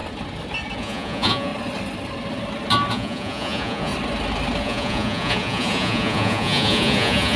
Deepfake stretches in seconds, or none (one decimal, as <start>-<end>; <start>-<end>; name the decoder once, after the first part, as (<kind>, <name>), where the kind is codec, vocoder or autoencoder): 0.8-1.5 (vocoder, Vocos); 2.9-3.9; 4.6-7.4